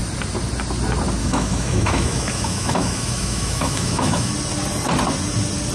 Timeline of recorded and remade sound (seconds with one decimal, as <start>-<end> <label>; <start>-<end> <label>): 0.0-1.2 recorded; 1.2-4.3 remade; 4.3-5.7 recorded